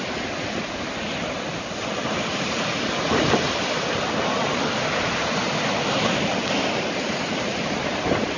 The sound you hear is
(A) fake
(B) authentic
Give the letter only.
B